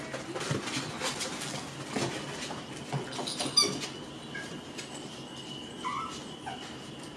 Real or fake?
real